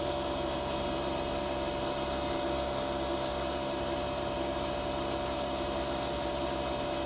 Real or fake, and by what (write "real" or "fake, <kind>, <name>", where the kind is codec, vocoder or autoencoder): real